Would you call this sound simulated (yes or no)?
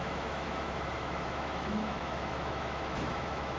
yes